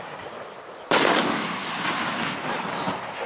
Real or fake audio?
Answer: real